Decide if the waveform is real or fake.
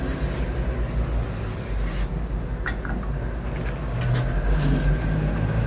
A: real